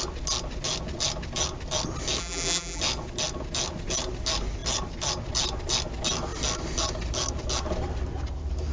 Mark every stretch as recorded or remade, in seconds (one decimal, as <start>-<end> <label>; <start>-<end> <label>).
0.0-2.2 recorded; 2.2-2.8 remade; 2.8-8.7 recorded